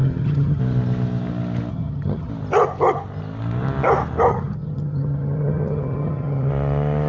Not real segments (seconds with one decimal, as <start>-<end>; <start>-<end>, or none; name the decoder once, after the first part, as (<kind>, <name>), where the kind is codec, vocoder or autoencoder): 0.0-0.6 (vocoder, HiFi-GAN); 1.7-2.3; 4.3-6.5